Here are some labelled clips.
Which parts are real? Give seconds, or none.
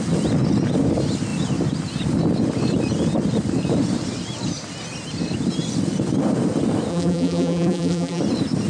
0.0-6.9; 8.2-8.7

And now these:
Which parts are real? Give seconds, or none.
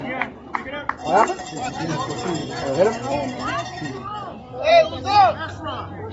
0.0-1.0; 1.7-2.4; 5.2-6.1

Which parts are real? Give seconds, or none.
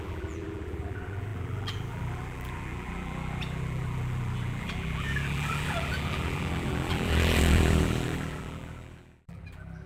none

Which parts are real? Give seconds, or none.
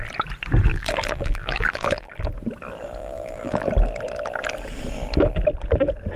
0.0-0.7; 2.1-3.0; 3.7-6.2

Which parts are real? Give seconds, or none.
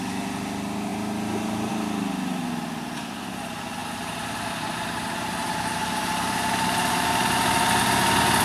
0.0-3.8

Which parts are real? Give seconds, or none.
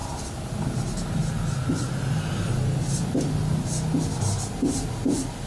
0.0-5.5